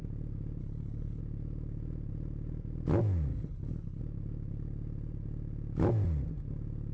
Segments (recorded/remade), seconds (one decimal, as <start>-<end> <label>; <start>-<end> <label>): 0.0-0.6 recorded; 0.6-1.2 remade; 1.2-3.3 recorded; 3.3-4.0 remade; 4.0-6.9 recorded